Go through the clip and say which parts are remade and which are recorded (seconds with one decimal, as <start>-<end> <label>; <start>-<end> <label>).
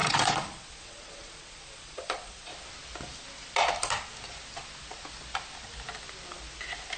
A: 0.0-2.5 remade; 2.5-7.0 recorded